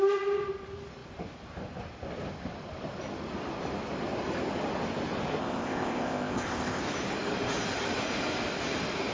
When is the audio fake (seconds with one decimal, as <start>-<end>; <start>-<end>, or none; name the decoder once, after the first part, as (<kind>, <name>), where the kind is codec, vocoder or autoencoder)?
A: 5.4-6.8 (codec, ZipCodec)